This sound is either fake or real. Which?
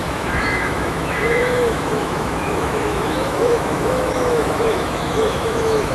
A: fake